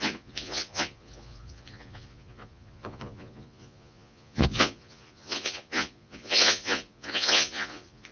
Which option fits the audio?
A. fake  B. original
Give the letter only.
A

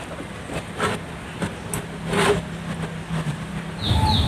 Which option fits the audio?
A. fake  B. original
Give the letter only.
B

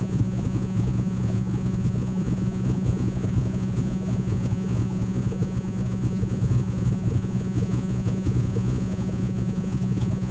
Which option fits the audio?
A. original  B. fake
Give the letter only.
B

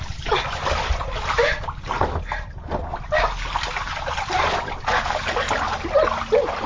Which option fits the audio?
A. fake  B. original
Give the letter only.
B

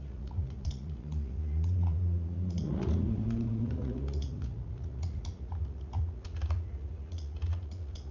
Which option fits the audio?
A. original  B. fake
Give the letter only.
B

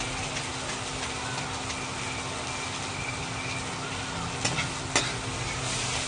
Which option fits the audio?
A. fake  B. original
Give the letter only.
B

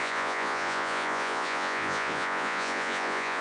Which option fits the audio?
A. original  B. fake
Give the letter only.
B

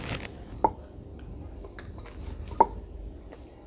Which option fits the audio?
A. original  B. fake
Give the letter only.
A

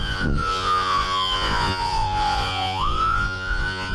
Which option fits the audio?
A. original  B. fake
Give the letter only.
B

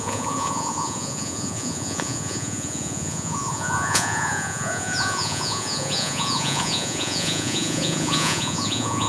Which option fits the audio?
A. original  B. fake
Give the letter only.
B